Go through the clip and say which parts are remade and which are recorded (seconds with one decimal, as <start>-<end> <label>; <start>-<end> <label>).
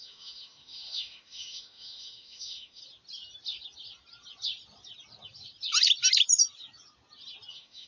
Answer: 0.0-2.8 remade; 2.8-7.5 recorded; 7.5-7.9 remade